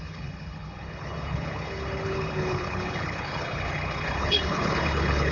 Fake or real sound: fake